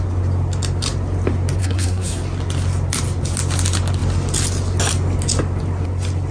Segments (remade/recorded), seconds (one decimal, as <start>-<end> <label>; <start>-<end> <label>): 0.0-1.6 recorded; 1.6-2.2 remade; 2.2-6.3 recorded